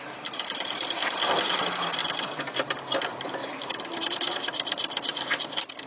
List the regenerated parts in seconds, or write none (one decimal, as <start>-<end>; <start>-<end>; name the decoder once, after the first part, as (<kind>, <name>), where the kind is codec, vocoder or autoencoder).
none